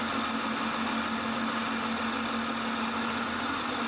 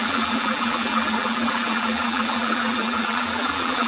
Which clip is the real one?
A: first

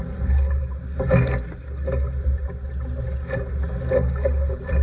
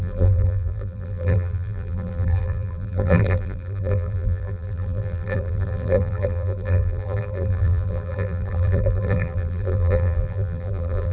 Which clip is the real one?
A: first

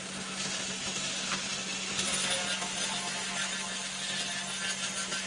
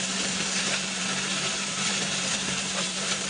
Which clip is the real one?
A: first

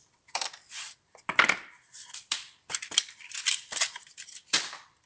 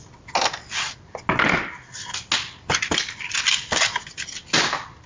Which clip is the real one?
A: second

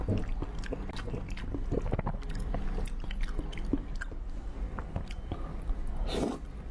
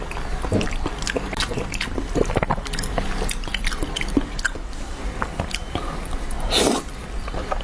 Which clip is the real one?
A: first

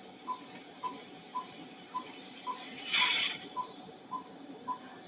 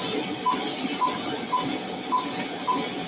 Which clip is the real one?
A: second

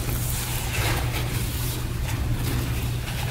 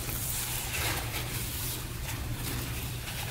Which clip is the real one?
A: first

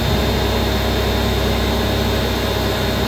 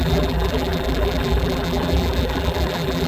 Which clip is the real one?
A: first